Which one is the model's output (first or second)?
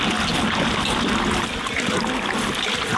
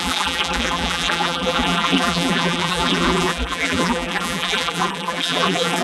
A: second